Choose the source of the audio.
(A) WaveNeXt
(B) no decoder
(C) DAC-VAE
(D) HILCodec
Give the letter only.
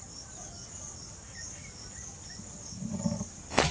B